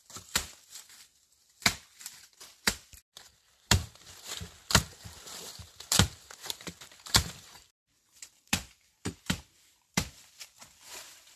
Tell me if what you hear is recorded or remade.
remade